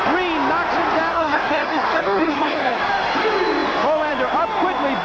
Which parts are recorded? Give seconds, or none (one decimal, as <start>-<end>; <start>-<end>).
0.0-1.1; 2.8-5.0